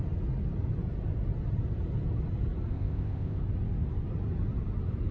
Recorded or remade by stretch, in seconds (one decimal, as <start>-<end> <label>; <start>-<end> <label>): 0.0-2.7 recorded; 2.7-3.4 remade; 3.4-5.1 recorded